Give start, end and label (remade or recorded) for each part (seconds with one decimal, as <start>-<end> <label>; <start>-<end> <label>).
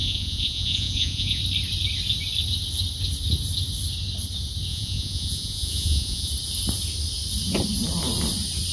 0.0-1.4 remade; 1.4-4.7 recorded; 4.7-6.3 remade; 6.3-8.7 recorded